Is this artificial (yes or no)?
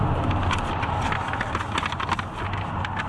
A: no